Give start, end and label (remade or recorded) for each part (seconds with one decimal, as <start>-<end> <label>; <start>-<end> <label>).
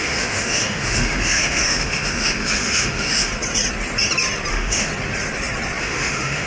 0.0-3.3 remade; 3.3-4.5 recorded; 4.5-4.9 remade; 4.9-5.8 recorded; 5.8-6.5 remade